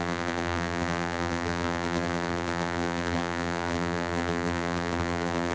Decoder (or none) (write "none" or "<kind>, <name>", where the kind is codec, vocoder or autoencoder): vocoder, BigVGAN v2